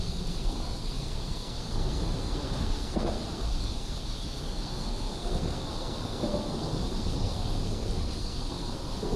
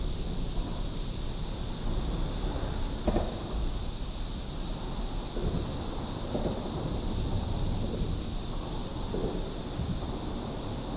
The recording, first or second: second